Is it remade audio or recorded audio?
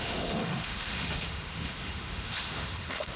remade